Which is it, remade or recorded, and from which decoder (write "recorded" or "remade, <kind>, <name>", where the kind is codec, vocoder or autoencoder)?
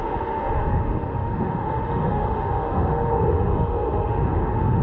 remade, autoencoder, DAC-VAE